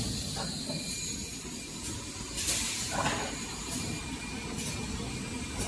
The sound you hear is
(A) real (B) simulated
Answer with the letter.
B